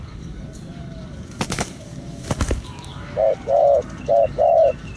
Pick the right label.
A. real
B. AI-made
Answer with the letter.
B